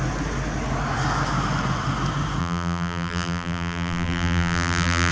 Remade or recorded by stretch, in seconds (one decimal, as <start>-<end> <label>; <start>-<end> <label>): 0.0-2.4 recorded; 2.4-5.1 remade